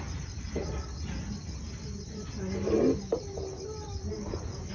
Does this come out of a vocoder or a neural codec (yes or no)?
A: no